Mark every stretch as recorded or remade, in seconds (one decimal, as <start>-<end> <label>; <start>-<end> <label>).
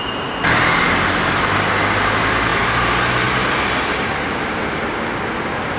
0.0-2.5 recorded; 2.5-4.1 remade; 4.1-5.8 recorded